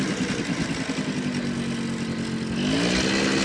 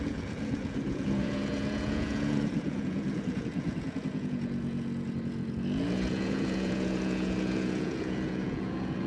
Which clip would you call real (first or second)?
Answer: first